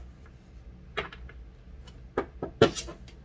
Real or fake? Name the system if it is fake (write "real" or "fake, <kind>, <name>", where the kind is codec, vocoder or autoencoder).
real